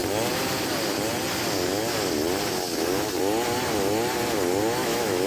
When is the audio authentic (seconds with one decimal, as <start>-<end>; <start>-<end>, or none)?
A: 0.0-4.8